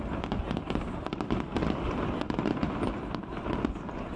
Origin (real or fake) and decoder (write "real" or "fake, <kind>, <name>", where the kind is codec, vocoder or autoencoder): real